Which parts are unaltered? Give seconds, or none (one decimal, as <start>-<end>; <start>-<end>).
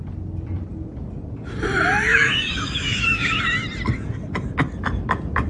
0.0-2.1; 3.4-5.5